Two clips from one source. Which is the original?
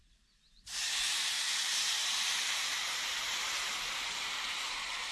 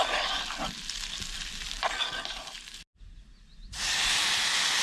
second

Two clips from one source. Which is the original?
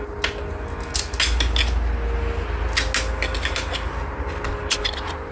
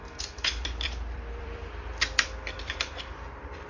first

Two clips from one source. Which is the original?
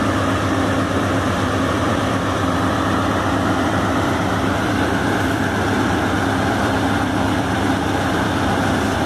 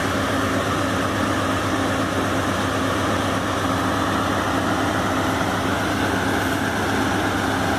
second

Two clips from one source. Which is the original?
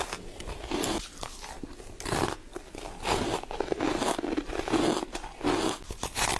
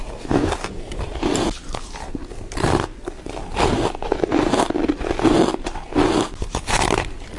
first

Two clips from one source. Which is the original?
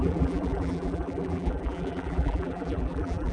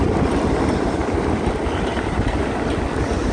second